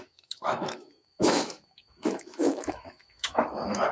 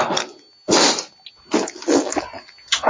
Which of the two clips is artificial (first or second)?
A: first